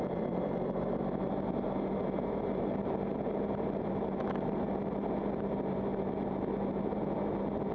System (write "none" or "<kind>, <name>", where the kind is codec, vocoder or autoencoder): vocoder, BigVGAN v2